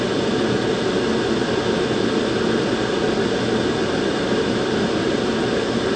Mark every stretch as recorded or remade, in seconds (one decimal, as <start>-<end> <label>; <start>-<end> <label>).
0.0-3.8 recorded; 3.8-5.1 remade; 5.1-6.0 recorded

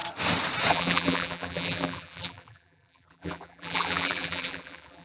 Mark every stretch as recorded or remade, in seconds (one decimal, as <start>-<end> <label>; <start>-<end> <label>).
0.0-0.7 recorded; 0.7-5.0 remade

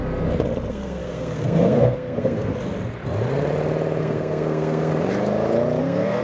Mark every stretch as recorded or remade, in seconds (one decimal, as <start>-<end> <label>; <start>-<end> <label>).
0.0-0.7 recorded; 0.7-2.5 remade; 2.5-4.0 recorded; 4.0-4.9 remade; 4.9-5.8 recorded; 5.8-6.2 remade

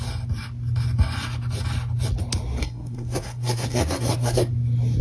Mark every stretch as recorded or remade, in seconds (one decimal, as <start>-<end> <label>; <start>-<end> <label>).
0.0-2.6 recorded; 2.6-4.5 remade; 4.5-5.0 recorded